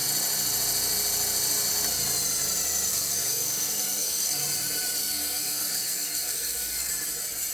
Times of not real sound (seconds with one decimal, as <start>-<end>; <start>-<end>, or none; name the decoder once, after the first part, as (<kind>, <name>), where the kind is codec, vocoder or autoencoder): 2.9-4.4 (codec, SNAC); 5.0-6.9